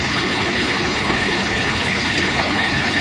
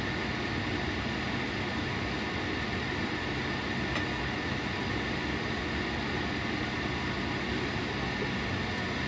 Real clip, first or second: second